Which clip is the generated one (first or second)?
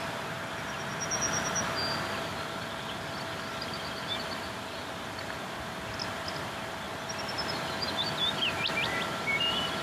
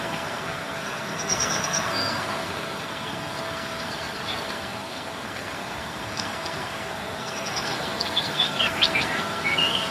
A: second